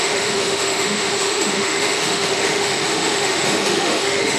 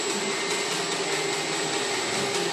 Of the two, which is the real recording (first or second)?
second